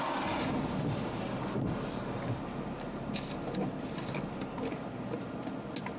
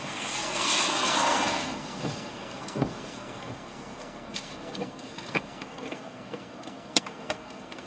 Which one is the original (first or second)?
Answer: first